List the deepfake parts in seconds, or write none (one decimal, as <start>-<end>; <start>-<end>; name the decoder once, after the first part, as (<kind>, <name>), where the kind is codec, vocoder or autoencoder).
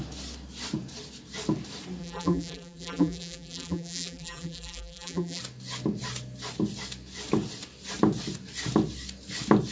2.0-5.4 (vocoder, BigVGAN v2)